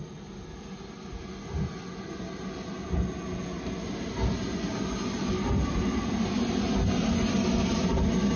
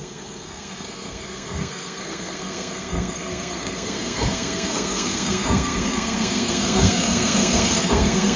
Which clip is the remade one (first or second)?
second